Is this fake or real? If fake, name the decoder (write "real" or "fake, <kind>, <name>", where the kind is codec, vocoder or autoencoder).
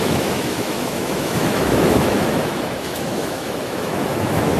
fake, autoencoder, DAC-VAE